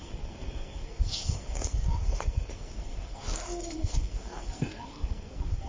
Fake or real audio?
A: fake